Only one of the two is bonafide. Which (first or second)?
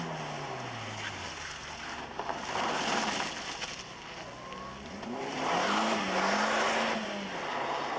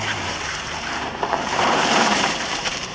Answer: first